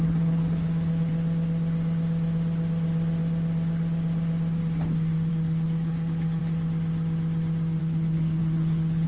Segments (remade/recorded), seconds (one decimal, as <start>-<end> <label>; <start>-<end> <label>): 0.0-1.1 remade; 1.1-5.3 recorded; 5.3-6.4 remade; 6.4-7.8 recorded; 7.8-9.1 remade